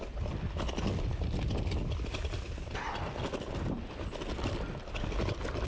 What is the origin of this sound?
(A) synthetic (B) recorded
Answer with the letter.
B